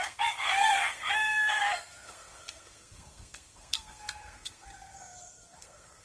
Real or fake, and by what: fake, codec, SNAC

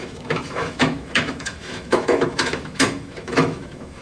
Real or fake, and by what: fake, autoencoder, DAC-VAE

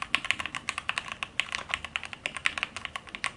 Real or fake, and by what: real